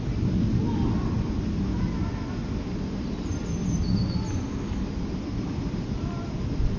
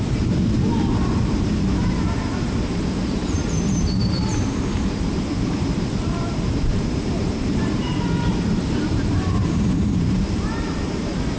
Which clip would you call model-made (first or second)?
second